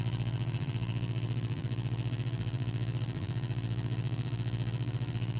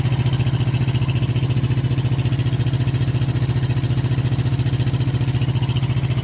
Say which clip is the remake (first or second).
first